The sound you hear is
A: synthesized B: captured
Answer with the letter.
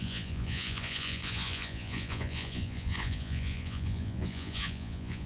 A